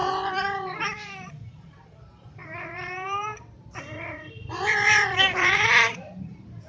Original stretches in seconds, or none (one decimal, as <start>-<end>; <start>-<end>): none